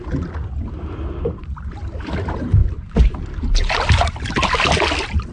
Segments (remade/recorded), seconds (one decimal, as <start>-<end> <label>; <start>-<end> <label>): 0.0-5.3 recorded